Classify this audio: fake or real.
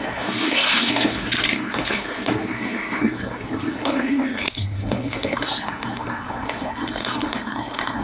fake